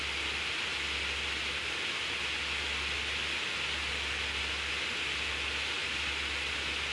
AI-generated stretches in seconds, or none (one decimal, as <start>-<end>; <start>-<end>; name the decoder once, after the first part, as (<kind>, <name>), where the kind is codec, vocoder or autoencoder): none